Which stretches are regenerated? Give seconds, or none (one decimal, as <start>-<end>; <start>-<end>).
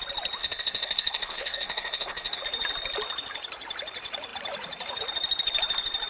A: 0.4-2.4